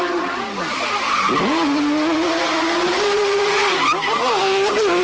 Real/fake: real